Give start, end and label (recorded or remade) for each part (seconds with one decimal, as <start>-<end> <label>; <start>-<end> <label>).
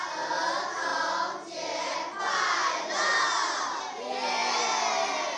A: 0.0-2.6 recorded; 2.6-4.0 remade; 4.0-5.4 recorded